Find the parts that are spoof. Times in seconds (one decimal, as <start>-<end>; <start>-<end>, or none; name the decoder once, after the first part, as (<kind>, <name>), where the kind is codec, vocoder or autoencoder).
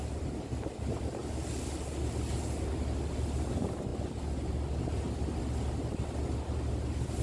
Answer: none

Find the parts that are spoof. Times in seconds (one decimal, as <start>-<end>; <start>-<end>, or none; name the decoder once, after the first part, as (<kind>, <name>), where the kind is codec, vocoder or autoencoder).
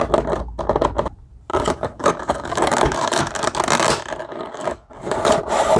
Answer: 1.5-3.2 (codec, DAC); 4.2-5.2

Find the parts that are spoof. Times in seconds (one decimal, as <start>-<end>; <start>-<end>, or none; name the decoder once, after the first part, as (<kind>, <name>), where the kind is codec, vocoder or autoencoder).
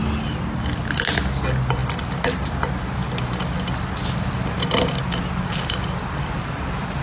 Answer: none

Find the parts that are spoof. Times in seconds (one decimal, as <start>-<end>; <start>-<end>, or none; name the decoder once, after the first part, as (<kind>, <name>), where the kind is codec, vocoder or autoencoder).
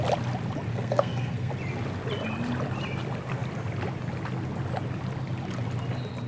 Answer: 0.7-1.5 (codec, SNAC)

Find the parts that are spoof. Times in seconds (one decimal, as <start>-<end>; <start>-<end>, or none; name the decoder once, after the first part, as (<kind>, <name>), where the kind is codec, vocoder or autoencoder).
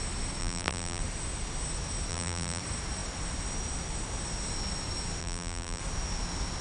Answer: 0.4-1.0 (vocoder, BigVGAN v2); 2.1-2.6; 5.2-5.8